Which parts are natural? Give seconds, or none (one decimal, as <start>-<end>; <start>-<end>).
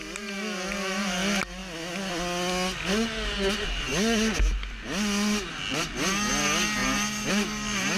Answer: 0.0-8.0